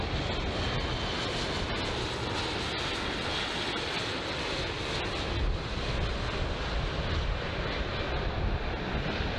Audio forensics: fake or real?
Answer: real